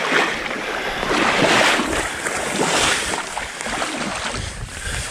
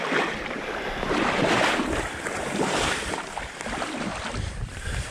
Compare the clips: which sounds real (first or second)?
first